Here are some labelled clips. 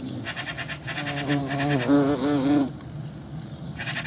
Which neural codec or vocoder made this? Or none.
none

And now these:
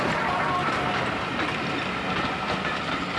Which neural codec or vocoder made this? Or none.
none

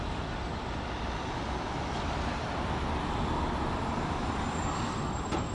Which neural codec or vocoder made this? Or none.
vocoder, BigVGAN v2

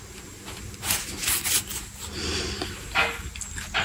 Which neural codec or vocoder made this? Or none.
none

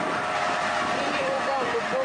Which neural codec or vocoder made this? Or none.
vocoder, BigVGAN v2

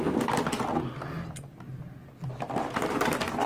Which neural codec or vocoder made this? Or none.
none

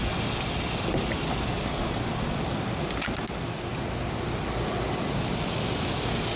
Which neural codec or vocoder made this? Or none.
none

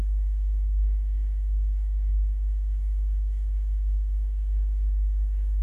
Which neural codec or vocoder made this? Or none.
codec, DAC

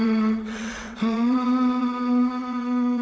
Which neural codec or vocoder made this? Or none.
vocoder, WaveNeXt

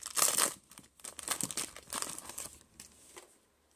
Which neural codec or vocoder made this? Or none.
none